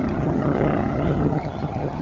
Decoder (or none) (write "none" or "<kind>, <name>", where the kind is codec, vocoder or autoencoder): vocoder, HiFi-GAN